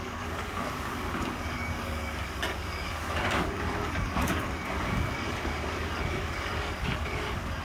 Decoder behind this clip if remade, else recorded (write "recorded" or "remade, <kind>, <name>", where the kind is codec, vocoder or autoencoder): remade, codec, DAC